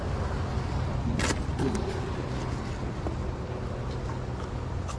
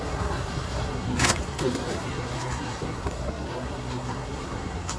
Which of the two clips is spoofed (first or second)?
second